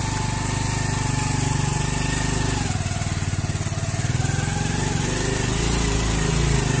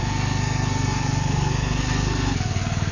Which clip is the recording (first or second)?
first